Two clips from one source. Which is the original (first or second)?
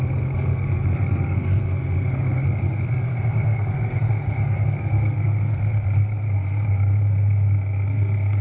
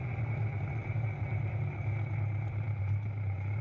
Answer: second